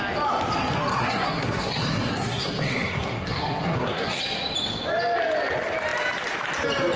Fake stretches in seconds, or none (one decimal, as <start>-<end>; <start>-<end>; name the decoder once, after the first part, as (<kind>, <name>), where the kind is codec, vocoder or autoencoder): 0.9-4.2 (codec, SNAC)